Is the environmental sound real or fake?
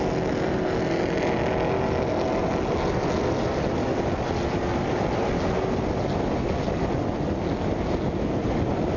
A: real